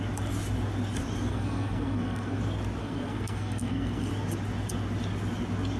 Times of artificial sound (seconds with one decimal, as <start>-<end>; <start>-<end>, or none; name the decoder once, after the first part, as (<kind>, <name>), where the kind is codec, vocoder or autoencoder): 1.3-2.4 (codec, SNAC); 2.8-4.1